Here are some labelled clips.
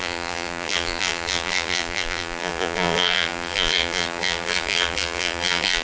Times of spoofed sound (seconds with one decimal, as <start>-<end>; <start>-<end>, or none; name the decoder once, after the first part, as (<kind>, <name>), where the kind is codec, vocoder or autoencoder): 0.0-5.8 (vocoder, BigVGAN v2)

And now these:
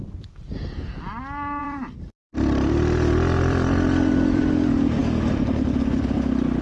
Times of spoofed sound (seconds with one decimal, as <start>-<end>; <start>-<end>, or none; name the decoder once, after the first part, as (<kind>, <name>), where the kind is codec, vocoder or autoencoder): 1.6-4.4 (vocoder, BigVGAN v2)

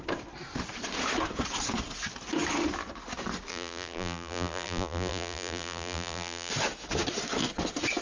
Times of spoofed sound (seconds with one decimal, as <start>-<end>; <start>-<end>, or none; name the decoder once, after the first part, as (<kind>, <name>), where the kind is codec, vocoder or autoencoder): 3.5-6.5 (vocoder, BigVGAN v2)

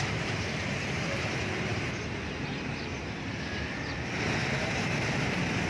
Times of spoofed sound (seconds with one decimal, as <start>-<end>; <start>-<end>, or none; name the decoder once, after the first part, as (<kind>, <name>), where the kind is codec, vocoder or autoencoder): 0.0-2.9 (vocoder, BigVGAN v2); 4.7-5.7

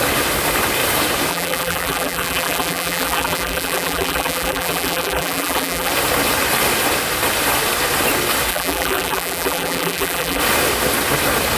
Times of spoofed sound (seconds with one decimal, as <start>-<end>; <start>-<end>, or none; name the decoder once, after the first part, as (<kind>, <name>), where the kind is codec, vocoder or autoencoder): 1.3-5.9 (vocoder, BigVGAN v2); 8.5-10.4

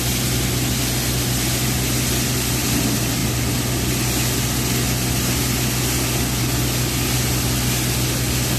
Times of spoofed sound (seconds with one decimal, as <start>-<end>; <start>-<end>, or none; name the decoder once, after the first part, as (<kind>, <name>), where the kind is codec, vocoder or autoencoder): none

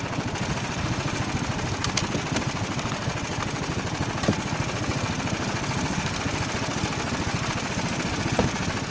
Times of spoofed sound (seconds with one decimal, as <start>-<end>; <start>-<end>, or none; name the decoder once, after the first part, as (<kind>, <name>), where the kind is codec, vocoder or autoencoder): 6.3-7.5 (vocoder, BigVGAN v2)

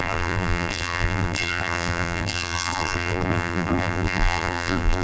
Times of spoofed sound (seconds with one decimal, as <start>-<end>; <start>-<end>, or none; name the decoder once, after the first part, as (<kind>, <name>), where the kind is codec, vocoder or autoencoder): 0.0-5.0 (vocoder, BigVGAN v2)